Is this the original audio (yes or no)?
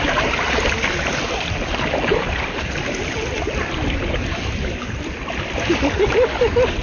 no